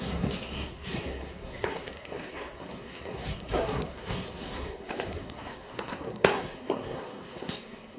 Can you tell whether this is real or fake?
fake